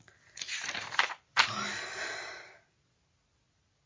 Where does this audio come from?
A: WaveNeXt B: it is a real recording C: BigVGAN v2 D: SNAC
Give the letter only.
B